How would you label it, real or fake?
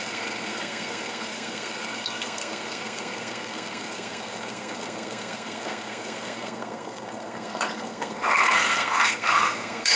fake